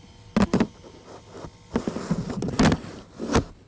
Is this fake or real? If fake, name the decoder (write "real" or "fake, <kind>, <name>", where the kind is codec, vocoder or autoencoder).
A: real